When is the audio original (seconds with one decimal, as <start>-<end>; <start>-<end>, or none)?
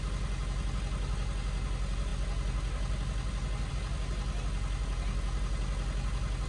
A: 0.0-6.5